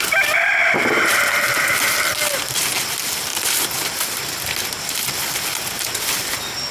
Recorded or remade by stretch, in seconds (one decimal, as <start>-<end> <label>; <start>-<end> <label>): 0.0-6.7 recorded